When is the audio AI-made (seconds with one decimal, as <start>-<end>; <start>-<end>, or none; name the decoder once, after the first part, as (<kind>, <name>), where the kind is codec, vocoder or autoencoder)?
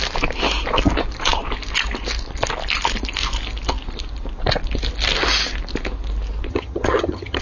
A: 6.5-7.4 (vocoder, HiFi-GAN)